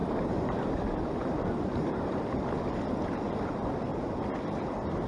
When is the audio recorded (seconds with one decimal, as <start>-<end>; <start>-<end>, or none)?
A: 0.0-1.2; 3.5-5.1